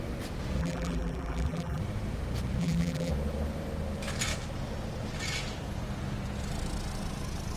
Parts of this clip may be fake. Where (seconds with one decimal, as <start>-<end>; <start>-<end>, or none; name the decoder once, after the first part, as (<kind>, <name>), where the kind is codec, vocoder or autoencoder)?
0.6-1.8 (vocoder, BigVGAN v2); 2.6-3.1